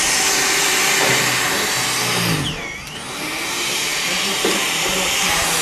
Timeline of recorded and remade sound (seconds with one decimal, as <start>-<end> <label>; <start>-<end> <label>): 0.0-0.8 remade; 0.8-3.1 recorded; 3.1-5.6 remade